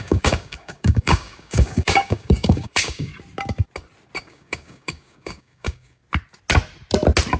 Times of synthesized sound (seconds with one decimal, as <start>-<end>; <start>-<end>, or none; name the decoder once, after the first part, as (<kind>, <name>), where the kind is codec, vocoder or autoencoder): 0.0-3.1 (codec, DAC); 4.2-6.0